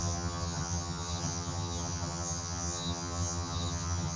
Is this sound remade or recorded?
remade